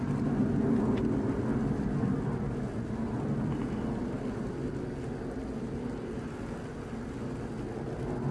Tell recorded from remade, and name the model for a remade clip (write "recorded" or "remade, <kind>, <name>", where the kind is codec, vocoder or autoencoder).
recorded